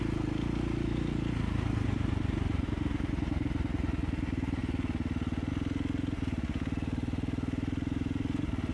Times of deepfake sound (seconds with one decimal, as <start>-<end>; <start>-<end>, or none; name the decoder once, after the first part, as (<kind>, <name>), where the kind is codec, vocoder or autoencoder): none